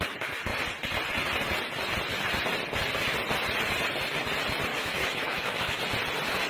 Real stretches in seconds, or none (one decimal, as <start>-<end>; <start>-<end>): 0.0-4.7; 5.8-6.5